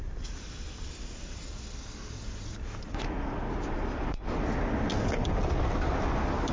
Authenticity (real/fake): real